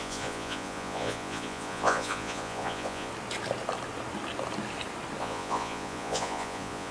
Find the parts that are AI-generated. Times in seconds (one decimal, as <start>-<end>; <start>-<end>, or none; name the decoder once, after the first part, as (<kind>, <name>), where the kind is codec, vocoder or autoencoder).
0.0-3.1 (vocoder, Vocos); 5.2-6.9